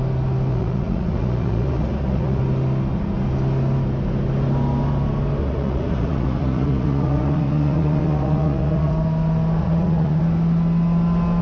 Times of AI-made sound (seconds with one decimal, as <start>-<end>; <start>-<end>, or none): 0.5-2.4; 5.4-8.9; 9.6-10.2